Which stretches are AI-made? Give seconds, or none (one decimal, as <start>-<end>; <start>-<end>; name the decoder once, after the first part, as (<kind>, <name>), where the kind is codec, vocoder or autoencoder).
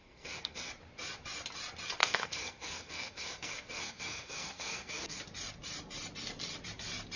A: 0.0-0.7 (codec, SNAC); 2.0-5.2